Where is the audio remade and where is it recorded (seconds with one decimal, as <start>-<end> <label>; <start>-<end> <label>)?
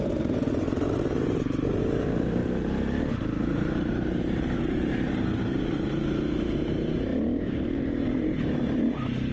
0.0-9.3 remade